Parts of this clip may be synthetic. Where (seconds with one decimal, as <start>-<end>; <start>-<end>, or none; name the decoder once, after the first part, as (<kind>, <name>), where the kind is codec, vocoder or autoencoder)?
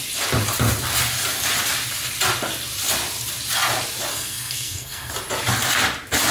4.1-5.1 (codec, SNAC)